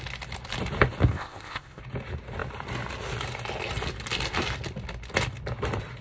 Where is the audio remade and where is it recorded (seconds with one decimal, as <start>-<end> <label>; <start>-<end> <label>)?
0.0-1.1 recorded; 1.1-1.8 remade; 1.8-6.0 recorded